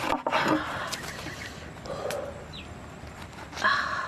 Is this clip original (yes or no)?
yes